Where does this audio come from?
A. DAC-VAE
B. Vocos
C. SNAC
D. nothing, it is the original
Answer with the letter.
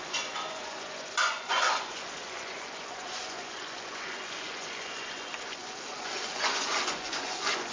B